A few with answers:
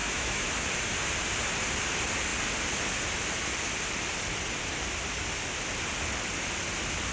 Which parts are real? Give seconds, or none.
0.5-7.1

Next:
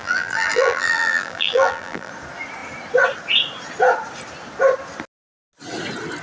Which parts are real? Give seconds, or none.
2.1-6.2

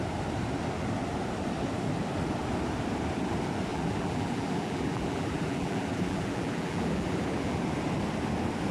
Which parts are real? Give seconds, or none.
0.0-3.7; 7.6-8.7

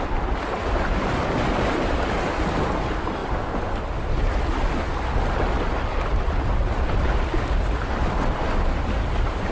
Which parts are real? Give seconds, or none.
0.0-9.5

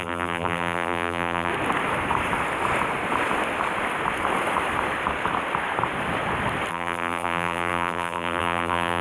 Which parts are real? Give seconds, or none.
1.5-6.7

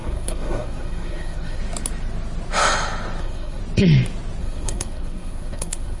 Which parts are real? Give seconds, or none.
1.6-3.2; 3.6-4.4

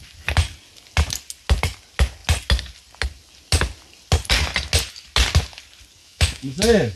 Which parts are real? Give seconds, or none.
0.0-6.0